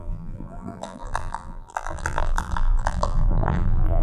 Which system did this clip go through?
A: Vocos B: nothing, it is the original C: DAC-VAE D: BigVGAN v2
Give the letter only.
D